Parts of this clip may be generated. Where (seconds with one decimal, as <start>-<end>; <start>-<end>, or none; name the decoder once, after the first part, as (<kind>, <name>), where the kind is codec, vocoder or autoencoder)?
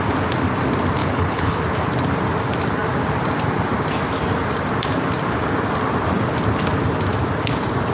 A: 1.0-1.6 (codec, HILCodec)